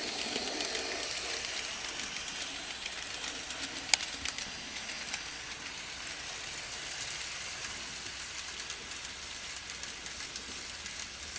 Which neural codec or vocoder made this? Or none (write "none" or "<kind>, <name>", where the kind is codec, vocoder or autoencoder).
none